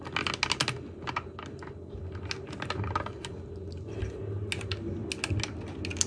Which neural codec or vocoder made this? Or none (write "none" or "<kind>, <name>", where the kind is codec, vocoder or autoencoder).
none